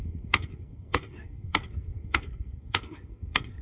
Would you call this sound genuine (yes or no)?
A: no